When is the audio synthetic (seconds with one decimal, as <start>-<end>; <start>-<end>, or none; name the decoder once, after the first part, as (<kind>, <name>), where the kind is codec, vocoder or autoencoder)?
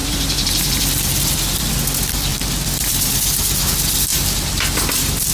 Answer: 0.0-1.7 (vocoder, BigVGAN v2); 2.3-3.1; 4.1-5.3